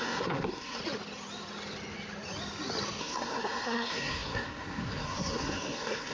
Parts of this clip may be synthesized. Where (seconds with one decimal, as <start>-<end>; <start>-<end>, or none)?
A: 0.0-0.8; 3.0-6.1